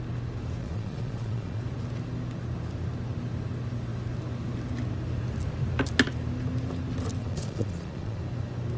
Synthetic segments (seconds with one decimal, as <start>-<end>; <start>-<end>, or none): 0.6-1.6; 7.2-8.2